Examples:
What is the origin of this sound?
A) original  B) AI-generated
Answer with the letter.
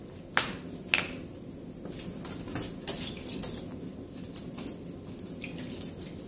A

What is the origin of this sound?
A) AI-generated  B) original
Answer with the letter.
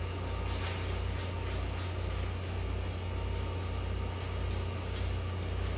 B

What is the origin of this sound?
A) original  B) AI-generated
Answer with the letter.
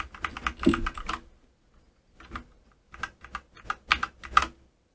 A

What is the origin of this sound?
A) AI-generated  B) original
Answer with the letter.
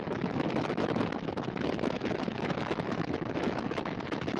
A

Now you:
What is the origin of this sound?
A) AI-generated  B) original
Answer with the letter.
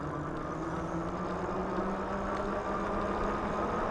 B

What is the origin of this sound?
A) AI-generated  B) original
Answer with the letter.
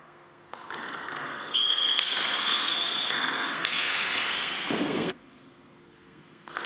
A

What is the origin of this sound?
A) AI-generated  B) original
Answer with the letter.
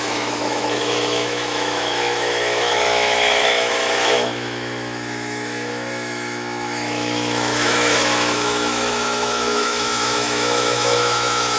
A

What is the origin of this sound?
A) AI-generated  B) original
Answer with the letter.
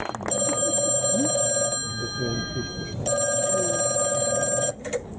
B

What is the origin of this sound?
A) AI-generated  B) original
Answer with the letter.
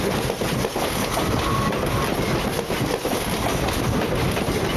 B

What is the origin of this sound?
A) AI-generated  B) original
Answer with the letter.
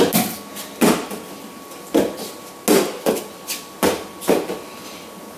B